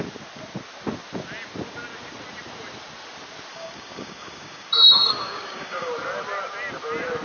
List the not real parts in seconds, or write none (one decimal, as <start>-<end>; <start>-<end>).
3.5-5.9